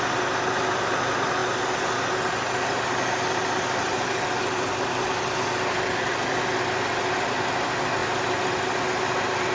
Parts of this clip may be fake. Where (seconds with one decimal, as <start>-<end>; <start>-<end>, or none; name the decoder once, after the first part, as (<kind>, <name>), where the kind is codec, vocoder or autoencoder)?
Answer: none